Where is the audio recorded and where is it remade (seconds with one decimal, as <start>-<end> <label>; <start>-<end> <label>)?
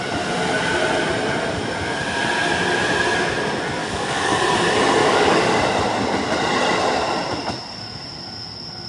0.0-3.8 recorded; 3.8-4.4 remade; 4.4-5.0 recorded; 5.0-5.6 remade; 5.6-8.9 recorded